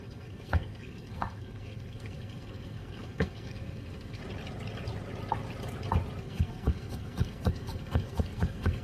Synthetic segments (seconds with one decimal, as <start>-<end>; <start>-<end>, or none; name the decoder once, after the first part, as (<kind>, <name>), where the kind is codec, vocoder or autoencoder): 0.0-4.2 (codec, SNAC); 6.2-8.8